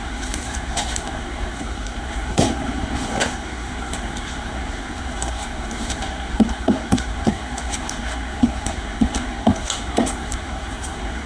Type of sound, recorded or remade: remade